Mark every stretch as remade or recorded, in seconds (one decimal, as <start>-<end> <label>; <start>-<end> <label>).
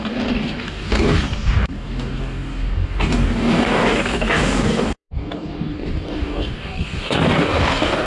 0.0-8.1 remade